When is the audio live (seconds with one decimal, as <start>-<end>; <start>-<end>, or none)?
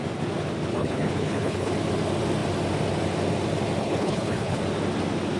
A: 0.0-0.7; 1.7-3.8; 4.6-5.4